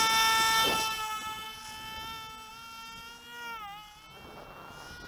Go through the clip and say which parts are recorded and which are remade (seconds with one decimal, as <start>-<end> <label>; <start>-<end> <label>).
0.0-5.1 recorded